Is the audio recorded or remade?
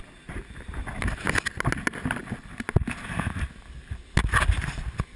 recorded